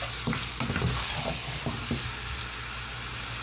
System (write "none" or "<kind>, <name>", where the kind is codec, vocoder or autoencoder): none